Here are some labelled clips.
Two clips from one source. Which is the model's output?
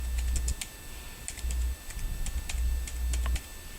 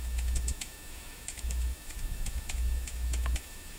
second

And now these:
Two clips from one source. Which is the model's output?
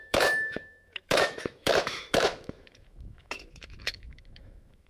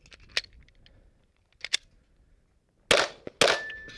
first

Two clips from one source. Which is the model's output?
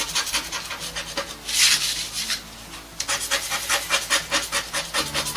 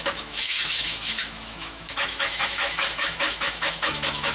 second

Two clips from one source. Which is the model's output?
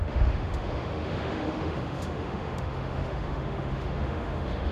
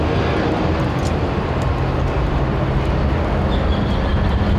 first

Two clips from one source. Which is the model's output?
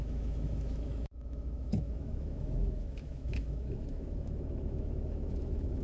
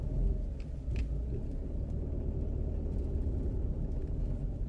first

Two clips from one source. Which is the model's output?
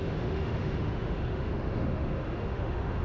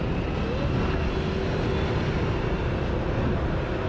first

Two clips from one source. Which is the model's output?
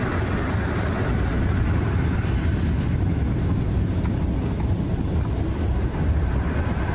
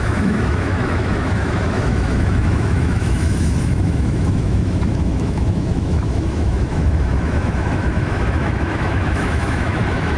second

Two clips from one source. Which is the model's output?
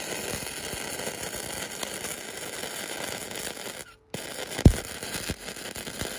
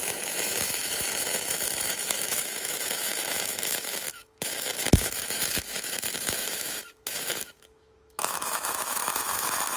second